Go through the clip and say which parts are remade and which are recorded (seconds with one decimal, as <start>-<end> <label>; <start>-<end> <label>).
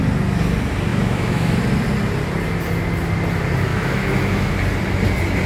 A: 0.0-0.9 recorded; 0.9-1.6 remade; 1.6-3.7 recorded; 3.7-4.5 remade; 4.5-5.5 recorded